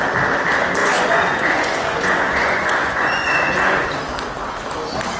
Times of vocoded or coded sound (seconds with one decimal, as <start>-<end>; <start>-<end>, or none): 0.8-3.9